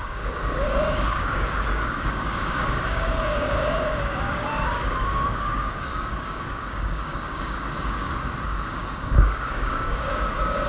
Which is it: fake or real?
fake